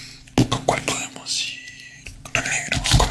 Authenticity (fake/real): real